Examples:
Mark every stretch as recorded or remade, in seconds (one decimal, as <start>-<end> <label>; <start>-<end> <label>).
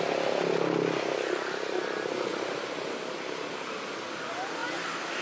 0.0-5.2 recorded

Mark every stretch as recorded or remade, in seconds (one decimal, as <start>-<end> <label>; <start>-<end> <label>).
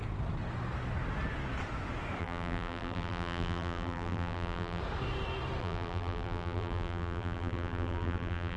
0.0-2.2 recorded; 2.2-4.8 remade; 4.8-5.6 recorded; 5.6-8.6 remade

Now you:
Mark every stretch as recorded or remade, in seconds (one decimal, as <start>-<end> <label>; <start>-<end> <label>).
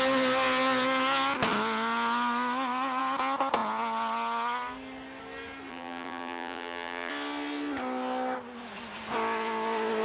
0.0-5.7 recorded; 5.7-7.1 remade; 7.1-10.0 recorded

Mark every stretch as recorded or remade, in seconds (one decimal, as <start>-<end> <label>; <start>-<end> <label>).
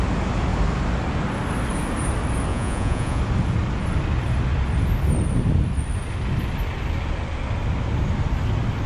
0.0-2.5 recorded; 2.5-3.2 remade; 3.2-8.9 recorded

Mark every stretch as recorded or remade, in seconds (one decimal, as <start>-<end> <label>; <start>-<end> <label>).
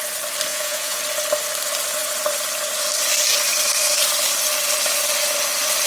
0.0-0.5 recorded; 0.5-1.0 remade; 1.0-5.9 recorded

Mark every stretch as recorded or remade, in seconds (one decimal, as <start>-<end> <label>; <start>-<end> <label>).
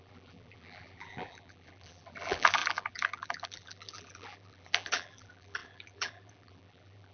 0.0-7.1 remade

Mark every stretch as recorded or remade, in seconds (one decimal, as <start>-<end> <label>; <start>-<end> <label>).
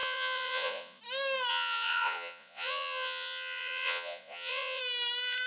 0.0-1.0 remade; 1.0-1.5 recorded; 1.5-4.8 remade; 4.8-5.5 recorded